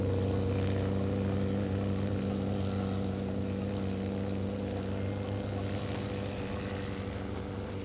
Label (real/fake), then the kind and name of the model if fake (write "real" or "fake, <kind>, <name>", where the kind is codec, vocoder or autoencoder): real